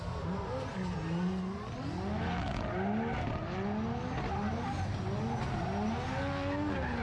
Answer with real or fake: real